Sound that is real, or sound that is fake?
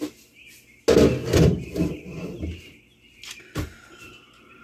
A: real